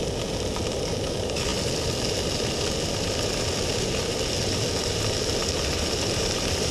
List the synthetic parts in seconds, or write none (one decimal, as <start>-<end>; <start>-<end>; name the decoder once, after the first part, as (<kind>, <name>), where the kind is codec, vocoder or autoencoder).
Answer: none